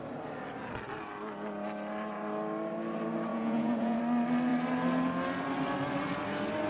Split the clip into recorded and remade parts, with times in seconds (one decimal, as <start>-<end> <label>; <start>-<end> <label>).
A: 0.0-3.3 recorded; 3.3-4.0 remade; 4.0-6.7 recorded